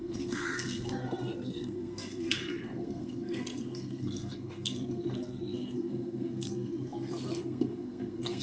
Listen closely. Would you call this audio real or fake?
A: fake